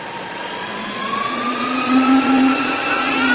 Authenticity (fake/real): fake